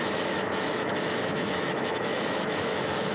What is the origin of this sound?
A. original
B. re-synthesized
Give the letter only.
B